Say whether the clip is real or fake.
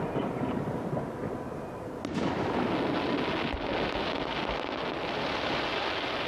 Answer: real